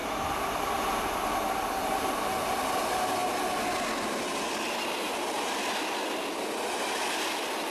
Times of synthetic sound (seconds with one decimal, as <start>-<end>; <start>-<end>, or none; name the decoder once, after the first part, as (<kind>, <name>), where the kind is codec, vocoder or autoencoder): 0.0-0.6 (vocoder, BigVGAN v2)